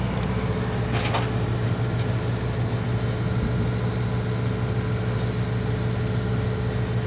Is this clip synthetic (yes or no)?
no